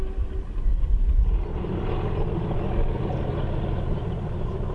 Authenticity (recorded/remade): recorded